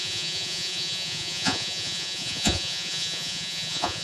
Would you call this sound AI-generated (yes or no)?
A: yes